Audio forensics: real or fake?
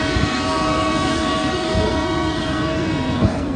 fake